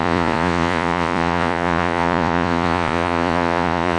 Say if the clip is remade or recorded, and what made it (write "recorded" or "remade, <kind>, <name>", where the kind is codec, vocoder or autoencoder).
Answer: remade, vocoder, Vocos